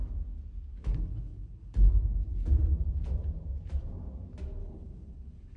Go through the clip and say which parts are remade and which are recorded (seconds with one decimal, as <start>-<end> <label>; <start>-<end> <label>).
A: 0.0-0.7 recorded; 0.7-1.9 remade; 1.9-4.6 recorded; 4.6-5.6 remade